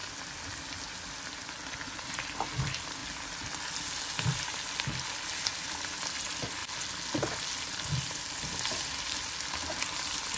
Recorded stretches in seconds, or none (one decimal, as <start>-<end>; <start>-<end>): 0.0-10.4